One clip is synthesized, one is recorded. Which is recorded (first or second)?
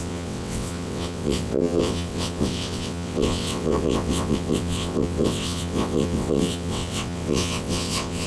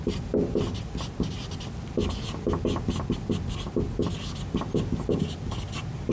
second